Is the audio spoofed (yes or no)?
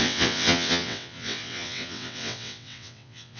yes